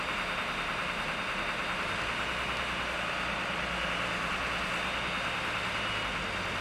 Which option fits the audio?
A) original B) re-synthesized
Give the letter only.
A